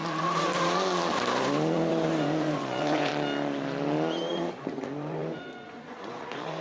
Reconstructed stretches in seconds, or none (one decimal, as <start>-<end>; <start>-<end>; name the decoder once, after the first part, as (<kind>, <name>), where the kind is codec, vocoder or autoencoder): 1.9-3.1 (vocoder, Vocos); 4.3-6.6